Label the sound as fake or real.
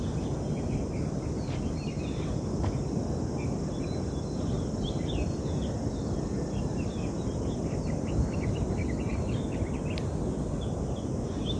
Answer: real